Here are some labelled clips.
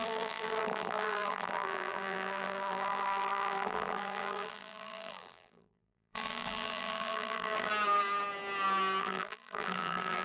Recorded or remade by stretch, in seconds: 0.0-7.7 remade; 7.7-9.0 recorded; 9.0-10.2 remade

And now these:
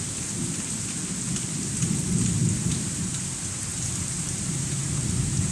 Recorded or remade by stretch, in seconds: 0.0-2.6 recorded; 2.6-3.2 remade; 3.2-3.7 recorded; 3.7-5.5 remade

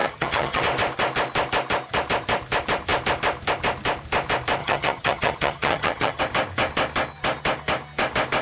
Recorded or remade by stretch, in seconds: 0.0-0.6 remade; 0.6-4.6 recorded; 4.6-6.2 remade; 6.2-8.4 recorded

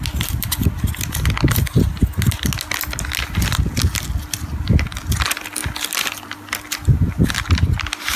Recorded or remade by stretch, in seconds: 0.0-5.6 recorded; 5.6-7.5 remade; 7.5-8.2 recorded

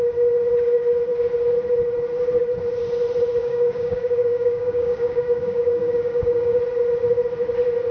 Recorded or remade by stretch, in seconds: 0.0-3.4 recorded; 3.4-6.6 remade; 6.6-7.9 recorded

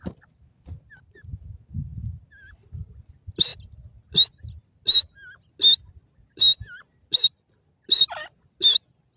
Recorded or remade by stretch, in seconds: 0.0-9.2 recorded

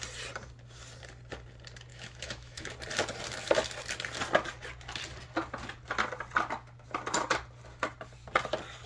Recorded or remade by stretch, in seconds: 0.0-1.9 recorded; 1.9-2.7 remade; 2.7-8.9 recorded